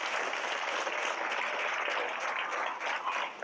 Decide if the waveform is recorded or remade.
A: recorded